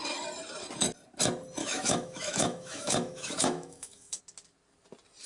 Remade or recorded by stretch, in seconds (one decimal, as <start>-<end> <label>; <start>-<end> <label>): 0.0-1.6 recorded; 1.6-4.2 remade; 4.2-5.3 recorded